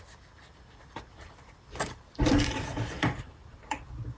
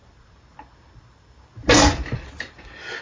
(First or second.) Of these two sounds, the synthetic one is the first